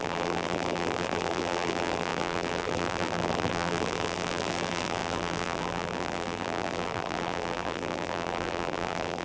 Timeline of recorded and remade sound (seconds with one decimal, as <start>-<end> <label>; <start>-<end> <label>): 0.0-9.2 remade